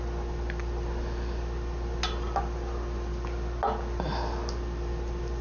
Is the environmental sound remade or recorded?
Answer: recorded